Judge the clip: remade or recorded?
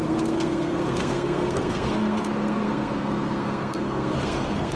remade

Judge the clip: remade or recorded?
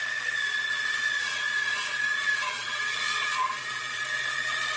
remade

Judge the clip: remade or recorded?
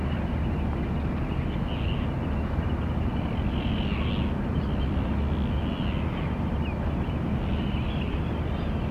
recorded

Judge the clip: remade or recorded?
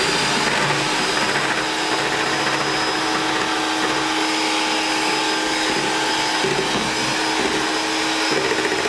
recorded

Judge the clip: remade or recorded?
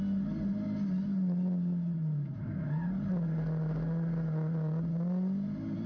recorded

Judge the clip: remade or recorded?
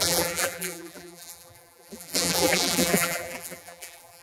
remade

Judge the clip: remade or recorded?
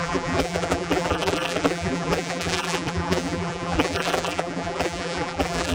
remade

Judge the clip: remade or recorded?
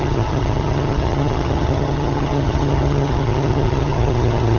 remade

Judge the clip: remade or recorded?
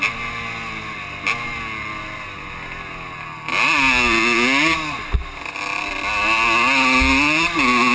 recorded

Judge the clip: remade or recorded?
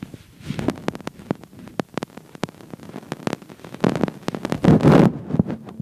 recorded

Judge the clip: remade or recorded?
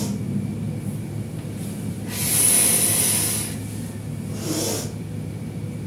recorded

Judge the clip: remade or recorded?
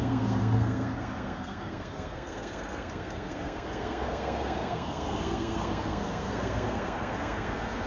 remade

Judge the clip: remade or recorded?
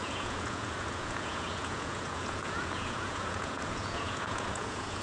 remade